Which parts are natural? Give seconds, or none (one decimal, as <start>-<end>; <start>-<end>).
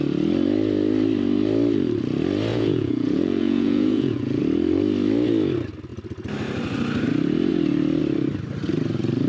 0.0-2.5; 4.4-9.3